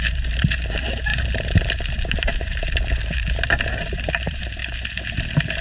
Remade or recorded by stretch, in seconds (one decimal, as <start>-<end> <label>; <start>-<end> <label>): 0.0-4.6 remade; 4.6-5.6 recorded